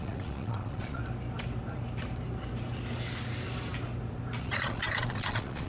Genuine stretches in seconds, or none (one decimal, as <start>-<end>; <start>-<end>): 1.0-4.4